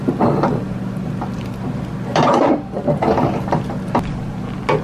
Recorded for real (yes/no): yes